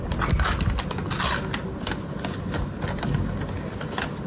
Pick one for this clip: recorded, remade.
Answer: recorded